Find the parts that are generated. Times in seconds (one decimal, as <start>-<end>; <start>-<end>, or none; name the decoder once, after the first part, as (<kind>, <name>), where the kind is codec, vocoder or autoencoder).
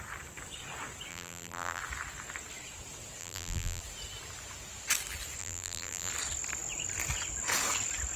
1.1-1.8 (vocoder, BigVGAN v2); 3.2-3.8; 5.4-6.1